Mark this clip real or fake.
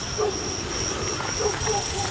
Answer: real